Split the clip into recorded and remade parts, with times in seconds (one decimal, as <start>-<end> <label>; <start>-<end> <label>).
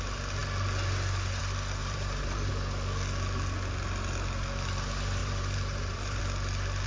0.0-1.8 recorded; 1.8-2.5 remade; 2.5-5.2 recorded; 5.2-6.2 remade; 6.2-6.9 recorded